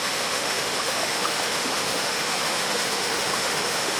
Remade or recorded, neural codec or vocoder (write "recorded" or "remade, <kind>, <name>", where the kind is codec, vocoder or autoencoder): remade, autoencoder, DAC-VAE